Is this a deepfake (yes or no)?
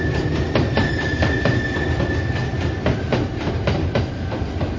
no